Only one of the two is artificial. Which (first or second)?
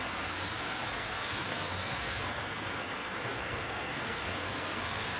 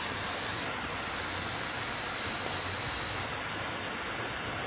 first